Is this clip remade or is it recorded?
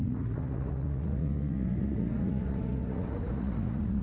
remade